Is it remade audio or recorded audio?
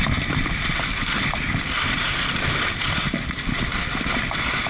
recorded